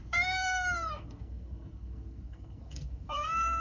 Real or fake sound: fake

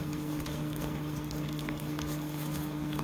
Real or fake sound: fake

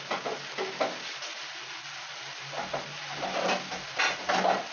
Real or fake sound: real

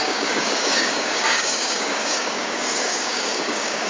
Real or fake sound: fake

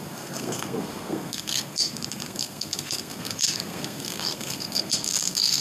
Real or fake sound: fake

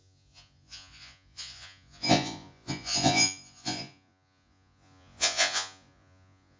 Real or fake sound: fake